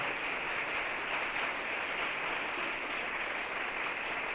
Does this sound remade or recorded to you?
recorded